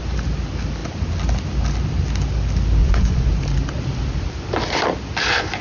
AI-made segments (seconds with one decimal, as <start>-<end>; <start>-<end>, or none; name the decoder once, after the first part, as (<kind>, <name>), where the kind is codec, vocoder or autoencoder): 2.8-3.3 (vocoder, Vocos)

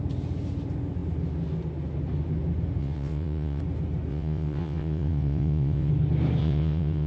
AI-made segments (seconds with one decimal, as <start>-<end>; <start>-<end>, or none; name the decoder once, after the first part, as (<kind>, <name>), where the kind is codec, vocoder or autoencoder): 2.8-3.6 (vocoder, WaveNeXt); 4.1-5.9; 6.4-7.1

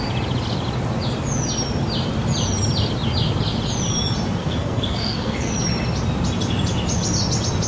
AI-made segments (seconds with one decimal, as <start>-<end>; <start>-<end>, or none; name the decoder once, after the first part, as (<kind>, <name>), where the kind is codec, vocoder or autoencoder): 4.4-5.5 (codec, SNAC)

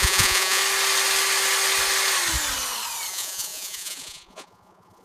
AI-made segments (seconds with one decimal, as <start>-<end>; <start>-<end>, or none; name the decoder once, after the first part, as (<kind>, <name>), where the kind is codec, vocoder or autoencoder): 0.0-0.6 (vocoder, Vocos); 3.1-5.0